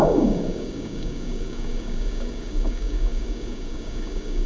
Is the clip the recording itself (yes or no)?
no